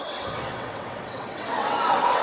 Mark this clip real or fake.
fake